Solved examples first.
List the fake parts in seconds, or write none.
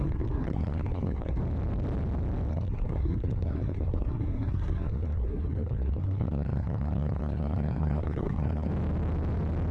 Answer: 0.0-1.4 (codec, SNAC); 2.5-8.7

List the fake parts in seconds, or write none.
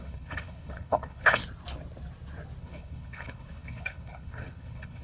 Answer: 0.0-1.4 (codec, HILCodec); 2.6-5.0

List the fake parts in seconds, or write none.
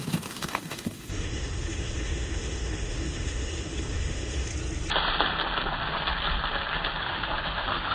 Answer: 0.0-4.5 (autoencoder, DAC-VAE); 7.0-7.9